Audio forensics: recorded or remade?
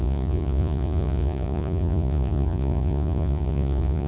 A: remade